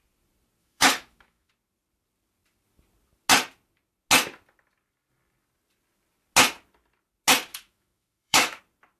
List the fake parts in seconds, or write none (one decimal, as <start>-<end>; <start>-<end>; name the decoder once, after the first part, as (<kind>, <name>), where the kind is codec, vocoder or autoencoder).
0.6-1.5 (autoencoder, DAC-VAE); 7.5-8.6